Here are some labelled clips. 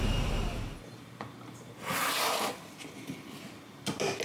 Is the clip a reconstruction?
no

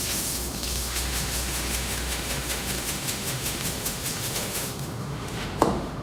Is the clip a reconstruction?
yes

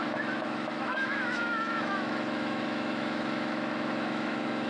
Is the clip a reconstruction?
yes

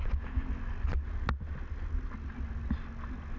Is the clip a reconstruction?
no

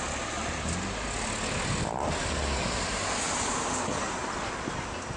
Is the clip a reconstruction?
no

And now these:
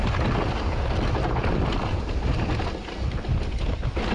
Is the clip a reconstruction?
no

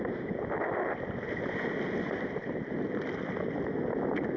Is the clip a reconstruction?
no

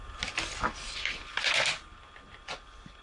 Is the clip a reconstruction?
no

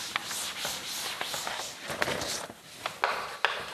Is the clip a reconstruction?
no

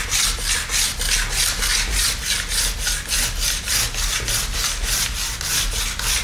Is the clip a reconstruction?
no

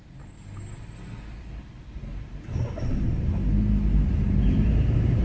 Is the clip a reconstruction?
no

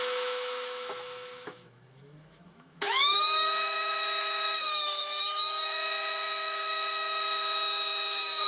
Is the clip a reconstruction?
yes